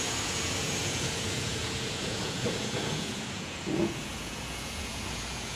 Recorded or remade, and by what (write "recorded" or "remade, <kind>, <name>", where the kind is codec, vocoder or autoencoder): remade, vocoder, Vocos